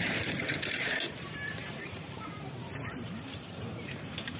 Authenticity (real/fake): fake